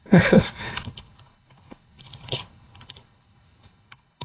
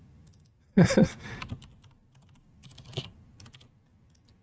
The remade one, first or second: first